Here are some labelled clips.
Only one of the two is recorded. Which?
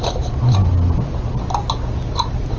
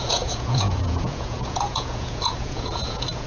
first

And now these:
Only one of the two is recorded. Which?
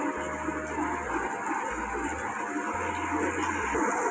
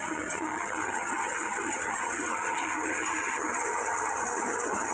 first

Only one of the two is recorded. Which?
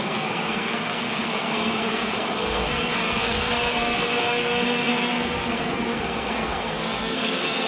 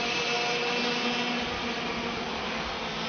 second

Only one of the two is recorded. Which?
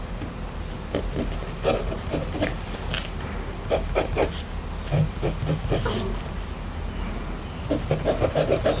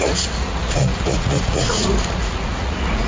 first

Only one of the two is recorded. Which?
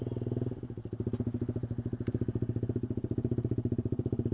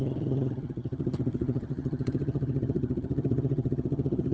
first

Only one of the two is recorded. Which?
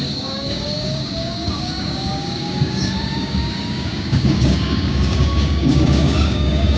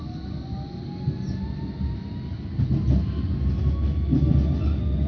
second